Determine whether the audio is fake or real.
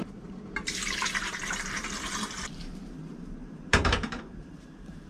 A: fake